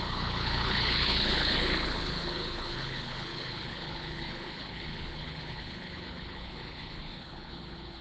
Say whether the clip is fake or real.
fake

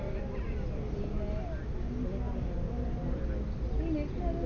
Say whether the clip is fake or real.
real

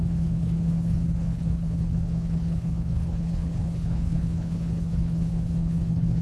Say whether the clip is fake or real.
fake